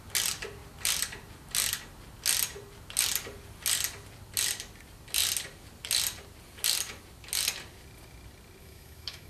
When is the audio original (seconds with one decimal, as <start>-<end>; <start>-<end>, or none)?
0.0-8.6